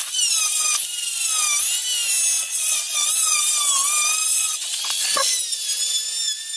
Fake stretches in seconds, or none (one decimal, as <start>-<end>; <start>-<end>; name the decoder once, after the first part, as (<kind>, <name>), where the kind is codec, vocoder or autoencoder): 2.4-3.4 (vocoder, Vocos); 4.3-5.3